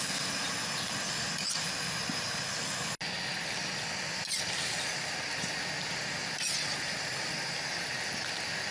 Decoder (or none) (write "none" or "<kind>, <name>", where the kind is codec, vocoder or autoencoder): none